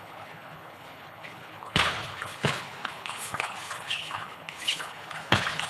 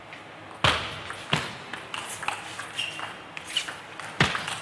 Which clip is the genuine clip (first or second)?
second